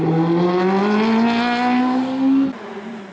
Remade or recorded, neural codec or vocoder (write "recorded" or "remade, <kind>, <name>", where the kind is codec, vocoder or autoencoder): recorded